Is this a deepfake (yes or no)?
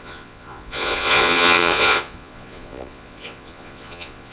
yes